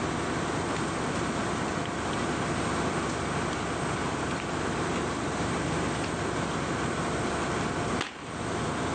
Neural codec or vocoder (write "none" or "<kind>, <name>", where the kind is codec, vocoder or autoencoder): none